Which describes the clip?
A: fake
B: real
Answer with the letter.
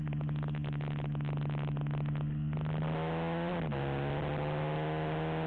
B